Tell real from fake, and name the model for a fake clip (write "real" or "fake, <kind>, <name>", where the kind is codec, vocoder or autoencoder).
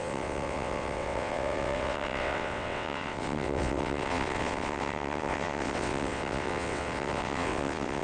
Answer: fake, vocoder, WaveNeXt